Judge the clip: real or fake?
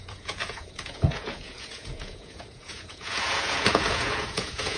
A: fake